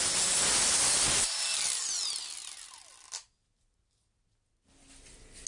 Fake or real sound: real